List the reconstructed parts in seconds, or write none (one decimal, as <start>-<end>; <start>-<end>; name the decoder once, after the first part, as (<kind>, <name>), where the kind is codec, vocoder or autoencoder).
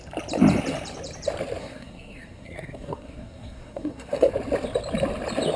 1.6-4.3 (codec, SNAC)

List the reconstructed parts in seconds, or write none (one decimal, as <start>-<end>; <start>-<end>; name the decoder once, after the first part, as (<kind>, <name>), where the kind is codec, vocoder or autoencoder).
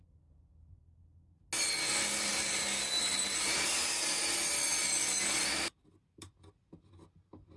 none